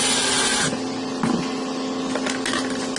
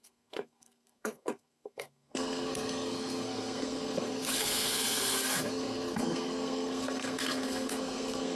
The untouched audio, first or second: first